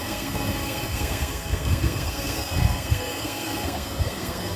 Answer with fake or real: fake